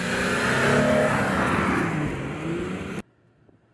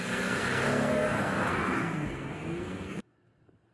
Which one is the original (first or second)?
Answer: first